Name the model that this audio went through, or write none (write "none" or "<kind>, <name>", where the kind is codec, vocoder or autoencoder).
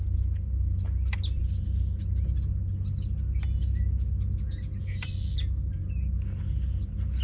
none